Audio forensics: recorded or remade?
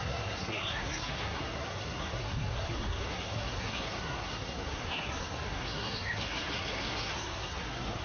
remade